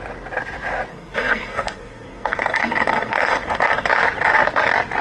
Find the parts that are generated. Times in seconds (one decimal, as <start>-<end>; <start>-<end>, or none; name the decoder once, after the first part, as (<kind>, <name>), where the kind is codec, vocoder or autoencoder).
0.9-3.9 (codec, SNAC)